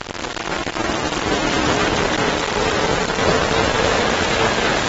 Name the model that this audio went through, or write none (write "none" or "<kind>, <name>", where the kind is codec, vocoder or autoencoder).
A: none